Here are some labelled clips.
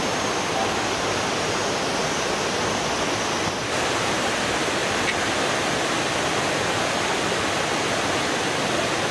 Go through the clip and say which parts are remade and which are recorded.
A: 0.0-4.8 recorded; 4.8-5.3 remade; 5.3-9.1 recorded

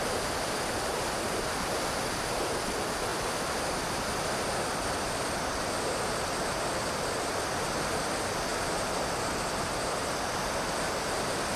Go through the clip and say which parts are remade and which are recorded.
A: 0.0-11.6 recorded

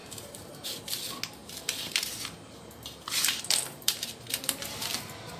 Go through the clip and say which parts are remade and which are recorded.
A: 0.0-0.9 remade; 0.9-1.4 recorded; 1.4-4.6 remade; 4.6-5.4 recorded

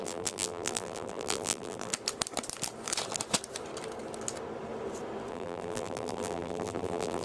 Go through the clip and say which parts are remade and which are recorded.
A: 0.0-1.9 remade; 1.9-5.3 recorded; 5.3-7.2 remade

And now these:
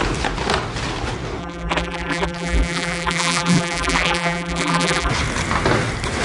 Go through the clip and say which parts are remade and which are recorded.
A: 0.0-1.4 recorded; 1.4-5.1 remade; 5.1-6.2 recorded

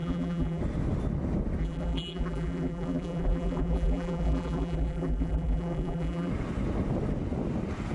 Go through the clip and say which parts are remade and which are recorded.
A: 0.0-0.6 remade; 0.6-1.6 recorded; 1.6-6.3 remade; 6.3-7.9 recorded

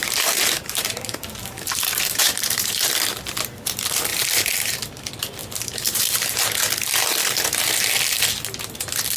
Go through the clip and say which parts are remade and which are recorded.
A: 0.0-2.9 remade; 2.9-4.1 recorded; 4.1-4.8 remade; 4.8-5.4 recorded; 5.4-6.4 remade; 6.4-9.2 recorded

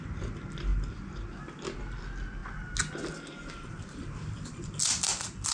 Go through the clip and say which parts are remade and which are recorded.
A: 0.0-5.5 recorded